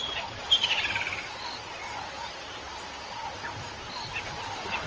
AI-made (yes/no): no